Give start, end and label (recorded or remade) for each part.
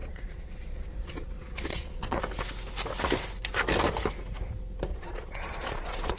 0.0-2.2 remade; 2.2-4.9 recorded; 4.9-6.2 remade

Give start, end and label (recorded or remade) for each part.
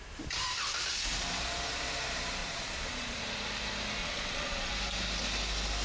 0.0-2.4 recorded; 2.4-3.2 remade; 3.2-4.0 recorded; 4.0-4.7 remade; 4.7-5.8 recorded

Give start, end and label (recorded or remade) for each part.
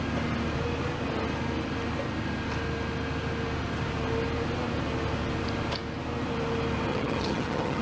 0.0-6.9 recorded; 6.9-7.8 remade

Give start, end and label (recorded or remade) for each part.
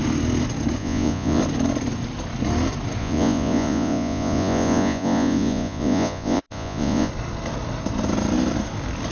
0.0-0.8 recorded; 0.8-1.4 remade; 1.4-3.0 recorded; 3.0-7.1 remade; 7.1-9.1 recorded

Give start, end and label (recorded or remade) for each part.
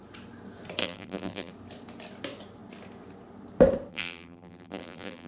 0.0-0.8 recorded; 0.8-1.5 remade; 1.5-3.9 recorded; 3.9-5.3 remade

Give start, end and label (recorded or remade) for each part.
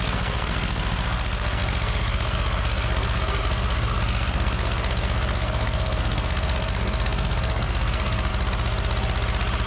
0.0-8.3 remade; 8.3-9.7 recorded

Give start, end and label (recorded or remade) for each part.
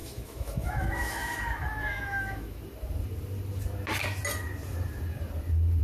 0.0-2.6 remade; 2.6-5.8 recorded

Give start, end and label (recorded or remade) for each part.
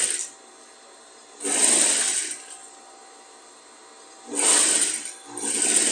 0.0-5.9 recorded